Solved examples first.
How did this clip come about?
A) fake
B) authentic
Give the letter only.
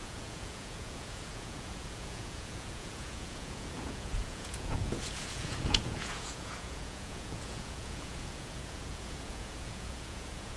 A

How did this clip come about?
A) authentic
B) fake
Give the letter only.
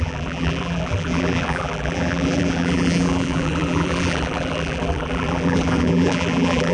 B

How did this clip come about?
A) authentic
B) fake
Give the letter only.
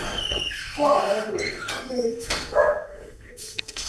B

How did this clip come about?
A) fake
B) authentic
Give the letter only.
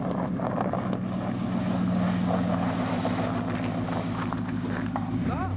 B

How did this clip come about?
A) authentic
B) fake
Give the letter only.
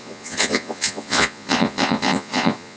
B